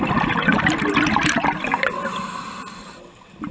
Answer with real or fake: real